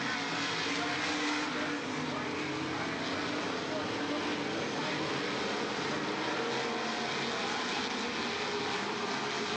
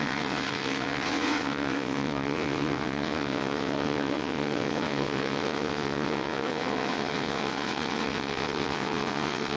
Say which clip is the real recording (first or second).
first